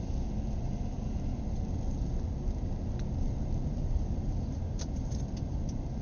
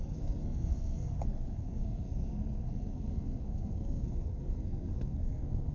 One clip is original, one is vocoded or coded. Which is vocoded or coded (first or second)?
second